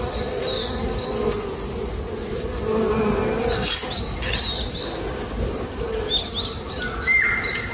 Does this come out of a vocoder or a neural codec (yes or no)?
no